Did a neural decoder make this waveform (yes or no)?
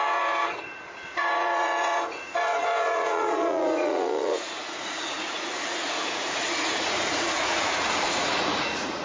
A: yes